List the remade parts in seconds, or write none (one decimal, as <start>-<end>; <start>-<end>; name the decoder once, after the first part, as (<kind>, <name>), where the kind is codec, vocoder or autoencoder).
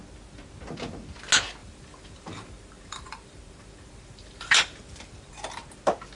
1.6-5.3 (vocoder, BigVGAN v2)